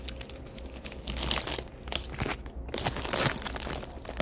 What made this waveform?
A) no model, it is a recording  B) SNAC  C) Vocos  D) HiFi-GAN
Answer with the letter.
A